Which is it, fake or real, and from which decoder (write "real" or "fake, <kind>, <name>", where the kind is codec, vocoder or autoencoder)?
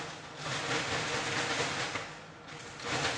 real